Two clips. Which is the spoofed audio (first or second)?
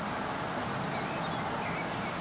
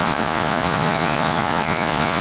second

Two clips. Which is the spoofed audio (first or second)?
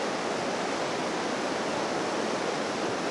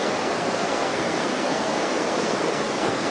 second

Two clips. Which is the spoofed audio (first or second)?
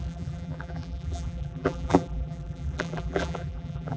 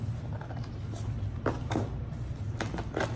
first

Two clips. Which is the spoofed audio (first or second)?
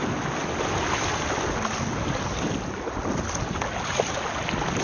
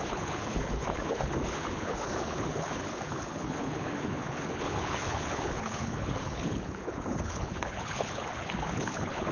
second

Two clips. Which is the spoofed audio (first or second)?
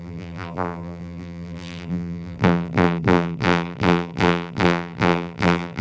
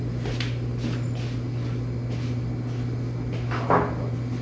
first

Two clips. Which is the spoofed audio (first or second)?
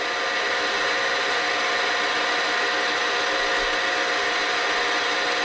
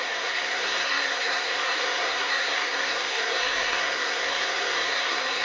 second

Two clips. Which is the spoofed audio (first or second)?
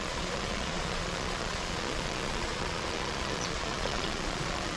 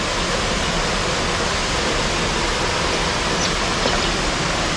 first